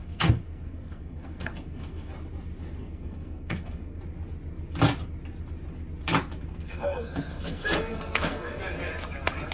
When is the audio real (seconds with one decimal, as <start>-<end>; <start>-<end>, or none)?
2.1-2.8; 4.0-6.5; 8.6-9.5